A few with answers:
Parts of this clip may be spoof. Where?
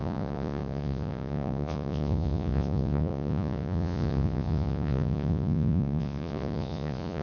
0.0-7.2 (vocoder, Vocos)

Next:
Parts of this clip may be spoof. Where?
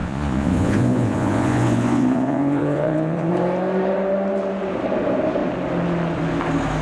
0.0-3.3 (vocoder, Vocos)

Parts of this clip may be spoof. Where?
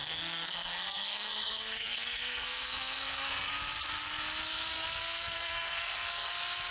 0.0-3.5 (codec, SNAC); 4.7-6.3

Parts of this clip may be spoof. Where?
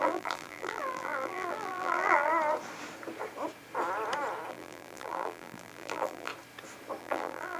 0.0-2.3 (vocoder, BigVGAN v2); 4.5-6.3; 7.0-7.6